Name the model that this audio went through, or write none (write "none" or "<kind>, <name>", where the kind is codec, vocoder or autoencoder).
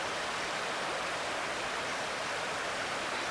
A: none